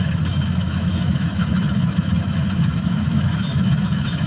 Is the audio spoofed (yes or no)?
yes